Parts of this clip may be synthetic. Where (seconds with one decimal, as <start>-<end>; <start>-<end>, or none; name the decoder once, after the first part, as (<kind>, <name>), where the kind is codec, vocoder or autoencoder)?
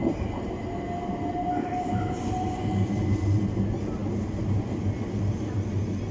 none